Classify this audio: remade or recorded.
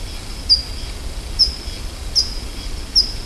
recorded